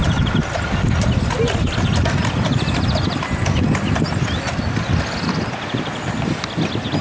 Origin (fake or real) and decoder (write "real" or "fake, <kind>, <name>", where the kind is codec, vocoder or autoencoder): real